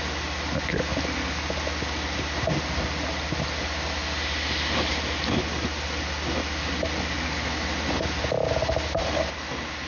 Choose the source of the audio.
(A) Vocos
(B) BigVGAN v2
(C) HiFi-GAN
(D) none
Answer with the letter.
D